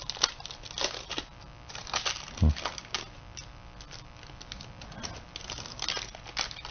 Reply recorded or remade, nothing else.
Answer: recorded